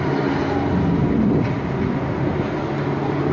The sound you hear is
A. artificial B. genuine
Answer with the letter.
B